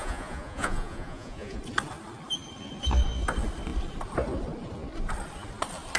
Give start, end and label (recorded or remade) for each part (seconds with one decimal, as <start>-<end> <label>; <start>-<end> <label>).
0.0-1.6 remade; 1.6-6.0 recorded